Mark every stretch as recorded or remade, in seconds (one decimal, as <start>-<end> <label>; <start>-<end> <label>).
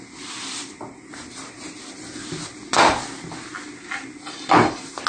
0.0-5.1 recorded